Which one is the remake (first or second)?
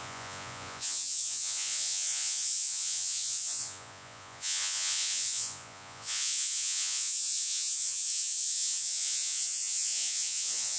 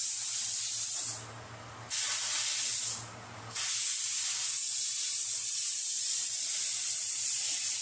first